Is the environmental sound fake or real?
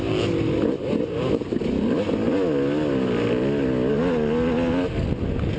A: real